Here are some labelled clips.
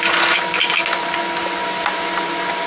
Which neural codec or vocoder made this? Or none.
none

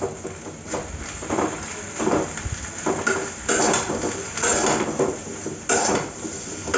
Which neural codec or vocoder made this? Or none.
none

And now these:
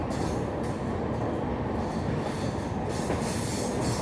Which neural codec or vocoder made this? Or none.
none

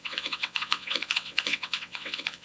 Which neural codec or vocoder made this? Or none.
vocoder, WaveNeXt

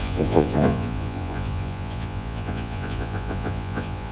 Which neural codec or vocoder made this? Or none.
vocoder, Vocos